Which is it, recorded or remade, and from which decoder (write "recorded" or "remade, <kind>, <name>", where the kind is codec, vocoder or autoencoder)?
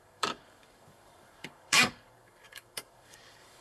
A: remade, codec, DAC